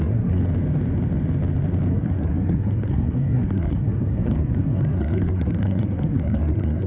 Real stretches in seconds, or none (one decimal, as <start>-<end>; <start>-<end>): 0.4-1.9